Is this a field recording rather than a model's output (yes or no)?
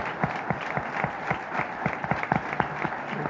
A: yes